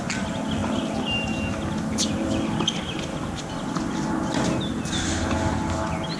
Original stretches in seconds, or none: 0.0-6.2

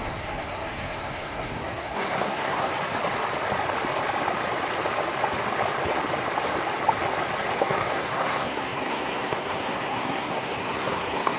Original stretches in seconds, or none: 2.7-7.6

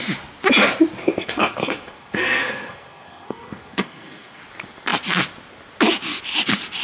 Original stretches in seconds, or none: 0.0-1.0; 4.4-6.8

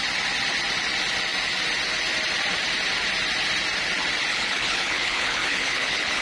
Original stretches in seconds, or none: 0.0-4.3